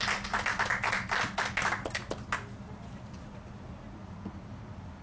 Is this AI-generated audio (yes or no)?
no